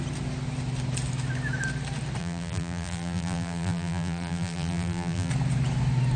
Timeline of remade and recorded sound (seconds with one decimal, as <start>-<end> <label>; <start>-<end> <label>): 0.0-2.2 recorded; 2.2-5.3 remade; 5.3-6.2 recorded